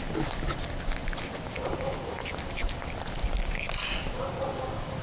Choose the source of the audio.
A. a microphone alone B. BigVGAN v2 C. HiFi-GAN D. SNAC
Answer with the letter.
A